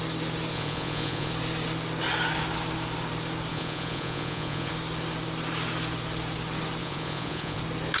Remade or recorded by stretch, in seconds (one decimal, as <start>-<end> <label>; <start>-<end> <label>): 0.0-0.5 recorded; 0.5-1.3 remade; 1.3-3.5 recorded; 3.5-4.7 remade; 4.7-6.8 recorded; 6.8-7.6 remade; 7.6-8.0 recorded